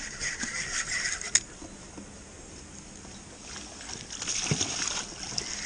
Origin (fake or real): real